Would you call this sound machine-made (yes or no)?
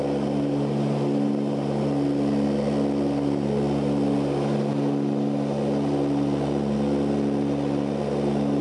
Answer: no